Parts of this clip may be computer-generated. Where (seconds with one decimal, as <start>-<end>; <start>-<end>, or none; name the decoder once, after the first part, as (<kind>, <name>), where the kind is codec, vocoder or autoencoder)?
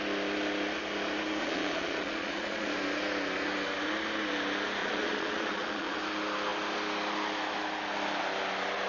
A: 1.4-2.7 (vocoder, Vocos); 4.8-6.0